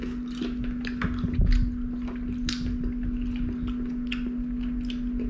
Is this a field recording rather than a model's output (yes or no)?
yes